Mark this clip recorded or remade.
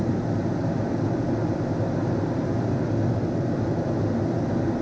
recorded